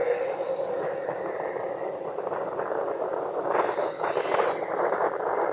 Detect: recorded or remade recorded